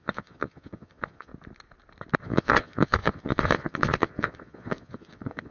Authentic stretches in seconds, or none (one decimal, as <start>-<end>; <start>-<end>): 1.3-2.2